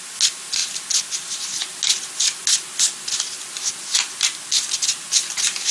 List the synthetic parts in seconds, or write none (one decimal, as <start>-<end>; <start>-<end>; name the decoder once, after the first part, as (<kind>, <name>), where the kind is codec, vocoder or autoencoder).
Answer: none